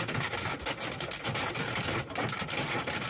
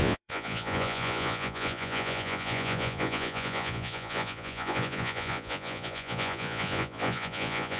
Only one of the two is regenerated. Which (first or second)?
second